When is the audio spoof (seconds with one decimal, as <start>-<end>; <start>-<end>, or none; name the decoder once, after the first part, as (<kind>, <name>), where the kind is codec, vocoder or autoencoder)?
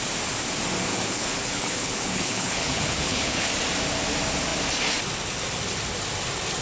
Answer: 0.9-3.5 (codec, HILCodec)